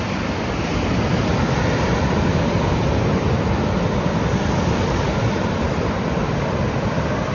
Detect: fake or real fake